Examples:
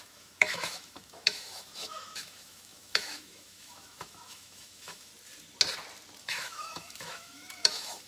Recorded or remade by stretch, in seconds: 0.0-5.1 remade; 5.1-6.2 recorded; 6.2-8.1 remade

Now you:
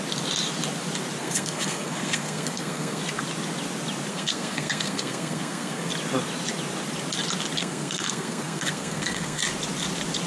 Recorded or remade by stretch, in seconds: 0.0-1.2 recorded; 1.2-3.0 remade; 3.0-4.1 recorded; 4.1-5.9 remade; 5.9-7.6 recorded; 7.6-9.4 remade; 9.4-10.3 recorded

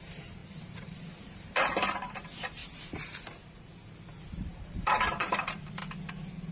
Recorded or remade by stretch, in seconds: 0.0-2.6 remade; 2.6-4.4 recorded; 4.4-5.8 remade; 5.8-6.5 recorded

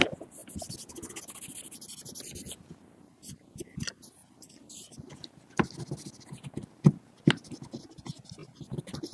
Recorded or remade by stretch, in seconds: 0.0-9.1 recorded

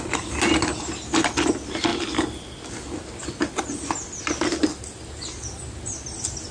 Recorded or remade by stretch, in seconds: 0.0-6.5 recorded

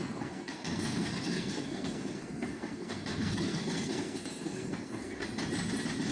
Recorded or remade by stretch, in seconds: 0.0-5.2 remade; 5.2-6.1 recorded

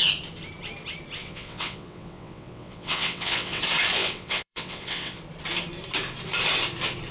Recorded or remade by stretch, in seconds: 0.0-1.2 recorded; 1.2-3.6 remade; 3.6-4.0 recorded; 4.0-5.2 remade; 5.2-7.1 recorded